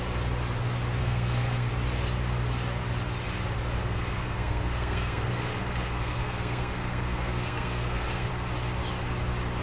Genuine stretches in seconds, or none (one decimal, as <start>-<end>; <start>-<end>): 0.0-1.0; 1.7-3.8; 8.3-9.6